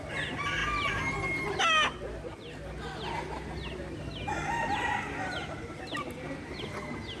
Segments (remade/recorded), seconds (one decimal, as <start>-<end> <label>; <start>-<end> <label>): 0.0-7.2 recorded